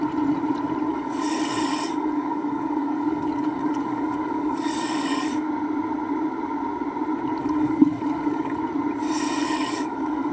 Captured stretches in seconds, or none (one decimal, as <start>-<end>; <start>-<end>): 0.0-0.9; 5.5-7.4; 8.6-9.4